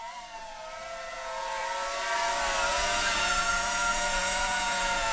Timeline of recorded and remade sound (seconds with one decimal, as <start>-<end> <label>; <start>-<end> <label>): 0.0-1.1 recorded; 1.1-1.6 remade; 1.6-2.7 recorded; 2.7-5.1 remade

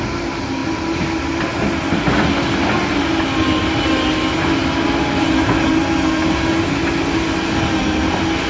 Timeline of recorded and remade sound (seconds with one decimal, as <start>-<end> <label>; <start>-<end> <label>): 0.0-8.5 recorded